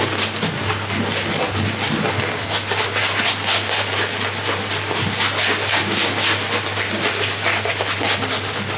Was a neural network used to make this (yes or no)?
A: no